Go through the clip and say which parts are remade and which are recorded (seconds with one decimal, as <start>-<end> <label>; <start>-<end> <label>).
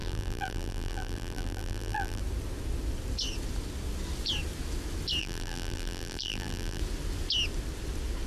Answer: 0.0-2.2 remade; 2.2-5.2 recorded; 5.2-6.8 remade; 6.8-8.3 recorded